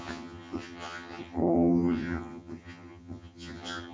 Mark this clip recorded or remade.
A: remade